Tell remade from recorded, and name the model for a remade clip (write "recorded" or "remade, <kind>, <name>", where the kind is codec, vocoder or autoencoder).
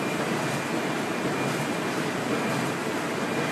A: recorded